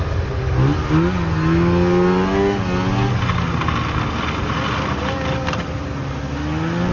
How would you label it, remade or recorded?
recorded